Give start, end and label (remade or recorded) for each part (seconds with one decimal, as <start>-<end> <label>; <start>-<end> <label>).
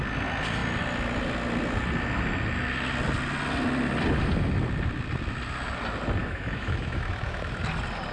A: 0.0-6.2 recorded; 6.2-7.6 remade; 7.6-8.1 recorded